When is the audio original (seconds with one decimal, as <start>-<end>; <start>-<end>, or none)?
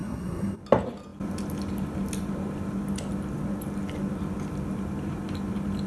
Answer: 0.6-5.9